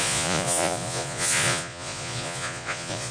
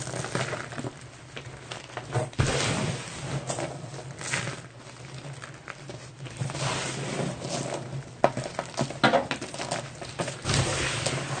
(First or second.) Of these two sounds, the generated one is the first